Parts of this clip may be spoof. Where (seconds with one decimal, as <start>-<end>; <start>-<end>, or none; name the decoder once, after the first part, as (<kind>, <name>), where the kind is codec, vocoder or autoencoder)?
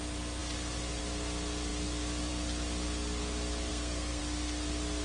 3.7-4.2 (codec, SNAC)